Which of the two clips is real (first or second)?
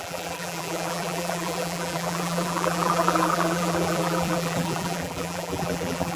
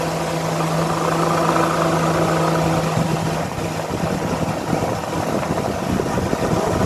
second